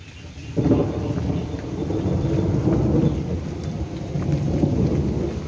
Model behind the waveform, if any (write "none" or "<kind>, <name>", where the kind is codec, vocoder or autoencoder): none